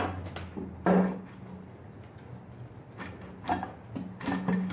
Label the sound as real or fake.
real